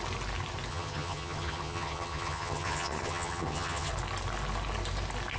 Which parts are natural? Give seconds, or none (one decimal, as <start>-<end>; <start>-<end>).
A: 0.0-0.7; 3.9-5.4